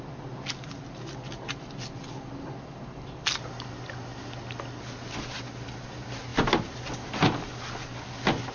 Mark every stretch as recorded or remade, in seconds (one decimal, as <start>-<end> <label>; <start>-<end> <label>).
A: 0.0-8.5 recorded